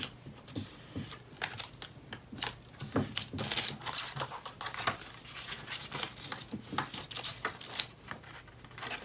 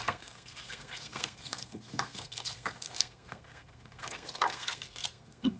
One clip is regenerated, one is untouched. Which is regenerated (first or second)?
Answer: second